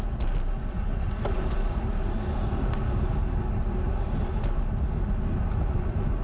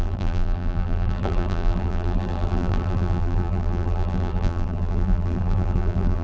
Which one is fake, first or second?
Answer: second